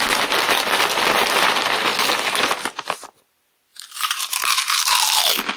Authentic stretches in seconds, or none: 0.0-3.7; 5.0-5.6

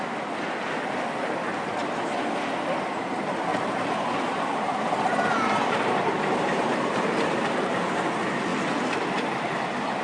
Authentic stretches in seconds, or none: 0.0-3.5; 7.8-10.0

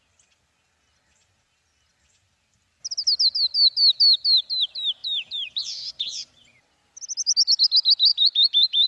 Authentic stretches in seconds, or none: 0.0-5.0; 6.7-8.1